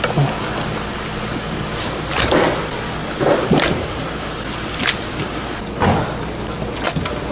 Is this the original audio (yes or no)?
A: yes